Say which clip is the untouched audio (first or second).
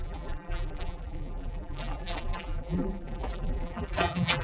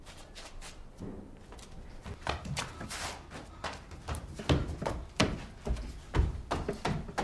second